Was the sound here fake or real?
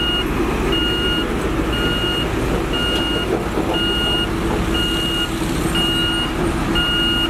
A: real